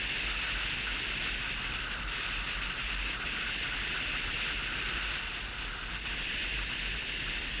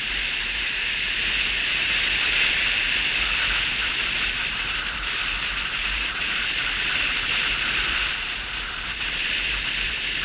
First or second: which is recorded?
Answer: first